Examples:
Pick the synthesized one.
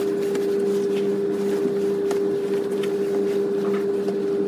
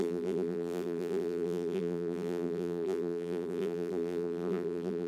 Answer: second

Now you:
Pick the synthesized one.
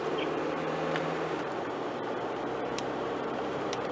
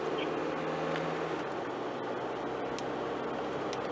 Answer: first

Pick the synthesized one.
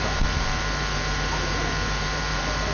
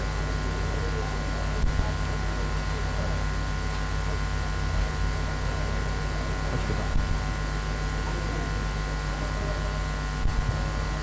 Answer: first